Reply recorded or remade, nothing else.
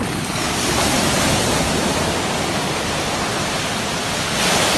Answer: recorded